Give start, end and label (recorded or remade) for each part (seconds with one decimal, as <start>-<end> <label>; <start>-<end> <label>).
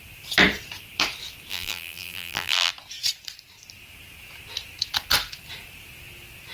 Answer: 0.0-1.5 recorded; 1.5-2.7 remade; 2.7-6.5 recorded